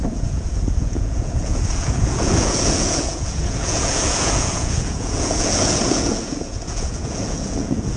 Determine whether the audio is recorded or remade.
remade